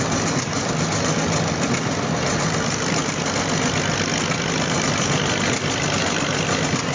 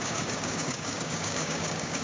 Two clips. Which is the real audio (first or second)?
first